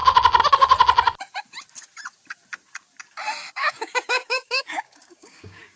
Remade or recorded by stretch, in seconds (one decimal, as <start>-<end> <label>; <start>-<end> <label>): 0.0-3.5 recorded; 3.5-5.8 remade